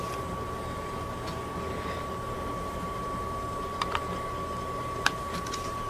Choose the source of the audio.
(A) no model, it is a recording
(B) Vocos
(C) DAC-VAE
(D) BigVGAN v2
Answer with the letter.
A